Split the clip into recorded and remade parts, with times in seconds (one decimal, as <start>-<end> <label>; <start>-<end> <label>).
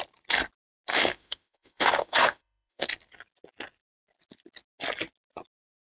0.0-0.9 recorded; 0.9-2.9 remade; 2.9-5.9 recorded